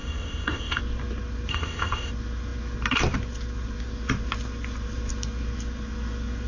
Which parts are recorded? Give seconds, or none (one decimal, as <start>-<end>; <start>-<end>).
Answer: 0.8-1.5; 2.1-6.5